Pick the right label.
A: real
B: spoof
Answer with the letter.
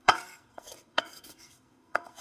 B